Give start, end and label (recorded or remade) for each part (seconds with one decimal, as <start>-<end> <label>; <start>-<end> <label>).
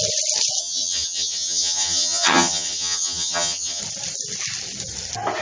0.0-0.6 recorded; 0.6-3.8 remade; 3.8-5.4 recorded